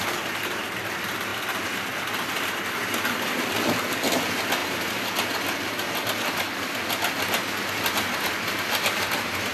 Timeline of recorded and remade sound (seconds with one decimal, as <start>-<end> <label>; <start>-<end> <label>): 0.0-9.5 recorded